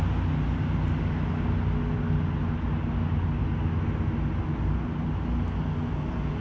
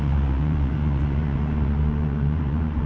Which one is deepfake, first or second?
second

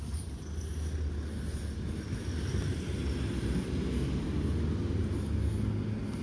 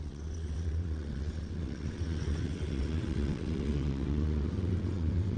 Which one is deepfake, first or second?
second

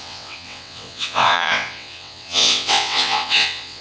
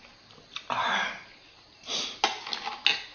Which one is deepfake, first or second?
first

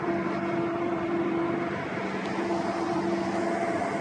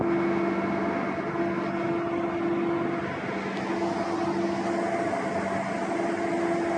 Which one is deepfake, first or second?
first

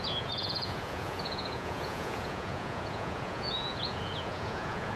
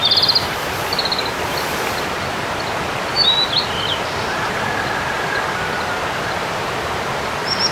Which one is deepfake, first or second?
first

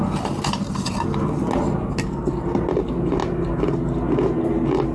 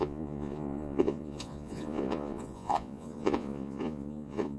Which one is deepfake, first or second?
second